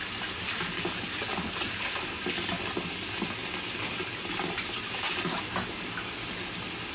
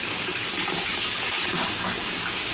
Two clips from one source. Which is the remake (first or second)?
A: second